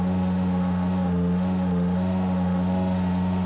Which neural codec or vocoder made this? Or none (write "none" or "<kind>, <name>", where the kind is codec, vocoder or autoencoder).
autoencoder, DAC-VAE